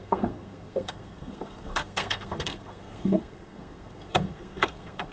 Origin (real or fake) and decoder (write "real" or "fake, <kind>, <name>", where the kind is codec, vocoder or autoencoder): fake, codec, SNAC